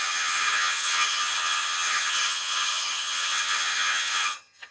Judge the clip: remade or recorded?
remade